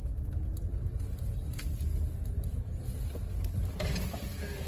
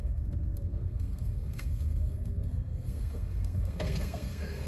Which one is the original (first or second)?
first